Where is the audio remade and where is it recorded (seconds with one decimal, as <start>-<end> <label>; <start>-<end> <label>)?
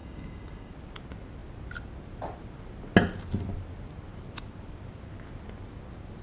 0.0-0.7 remade; 0.7-6.2 recorded